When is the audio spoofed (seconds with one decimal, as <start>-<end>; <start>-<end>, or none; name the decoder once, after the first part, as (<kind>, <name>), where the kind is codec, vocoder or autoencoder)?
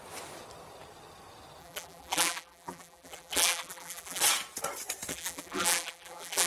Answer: 1.6-4.2 (vocoder, BigVGAN v2); 5.1-6.5